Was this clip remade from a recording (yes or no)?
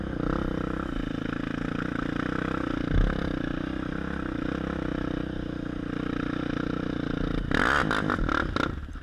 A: no